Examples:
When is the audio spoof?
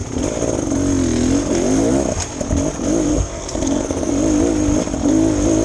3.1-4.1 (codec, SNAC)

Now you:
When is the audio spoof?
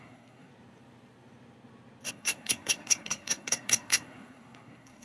0.0-0.5 (codec, SNAC); 2.1-5.0